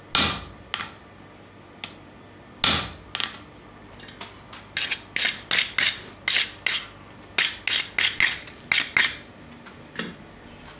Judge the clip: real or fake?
real